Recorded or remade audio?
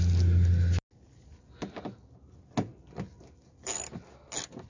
recorded